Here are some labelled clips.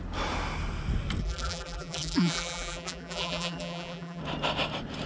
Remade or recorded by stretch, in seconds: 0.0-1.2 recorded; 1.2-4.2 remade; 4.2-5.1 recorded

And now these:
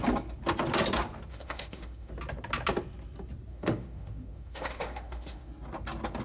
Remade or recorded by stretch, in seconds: 0.0-1.3 recorded; 1.3-2.1 remade; 2.1-3.5 recorded; 3.5-5.5 remade; 5.5-6.2 recorded

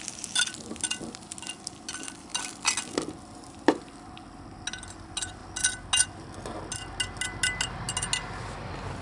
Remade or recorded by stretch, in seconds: 0.0-9.0 recorded